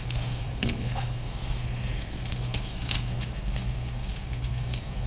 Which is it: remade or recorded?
remade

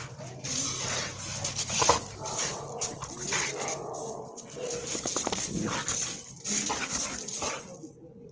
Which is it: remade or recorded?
recorded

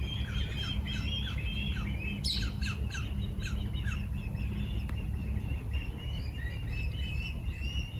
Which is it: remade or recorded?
recorded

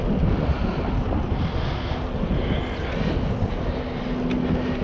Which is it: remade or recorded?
recorded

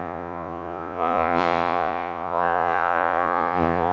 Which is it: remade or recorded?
remade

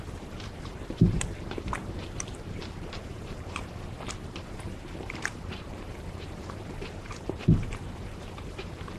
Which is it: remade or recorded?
remade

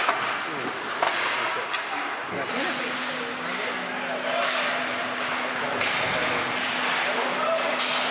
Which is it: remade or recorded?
recorded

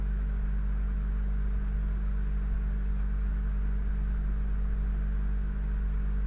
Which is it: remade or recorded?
recorded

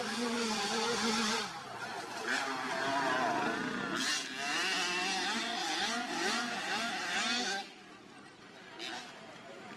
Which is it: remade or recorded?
recorded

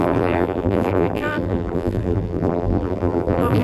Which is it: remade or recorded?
remade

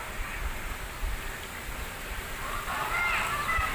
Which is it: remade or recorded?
recorded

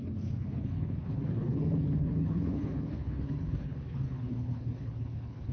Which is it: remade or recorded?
remade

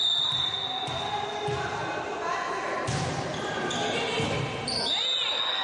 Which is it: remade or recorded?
recorded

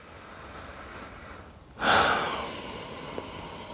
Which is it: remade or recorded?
recorded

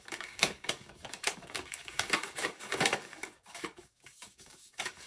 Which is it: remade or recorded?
remade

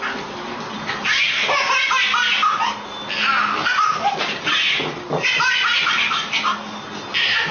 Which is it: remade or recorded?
recorded